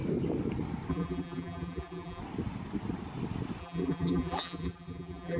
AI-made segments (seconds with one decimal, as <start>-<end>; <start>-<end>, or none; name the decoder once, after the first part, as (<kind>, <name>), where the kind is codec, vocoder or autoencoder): 0.9-2.2 (vocoder, BigVGAN v2); 3.6-5.4